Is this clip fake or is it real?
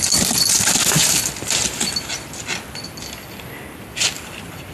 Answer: fake